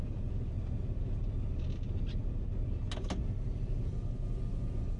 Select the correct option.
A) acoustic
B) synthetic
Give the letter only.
A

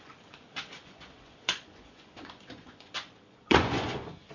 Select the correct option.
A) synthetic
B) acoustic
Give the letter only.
A